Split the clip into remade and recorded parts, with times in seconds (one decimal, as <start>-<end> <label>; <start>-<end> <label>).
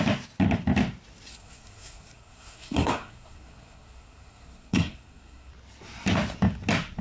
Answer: 0.0-1.3 recorded; 1.3-5.5 remade; 5.5-7.0 recorded